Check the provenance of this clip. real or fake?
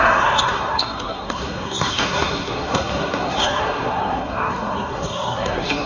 fake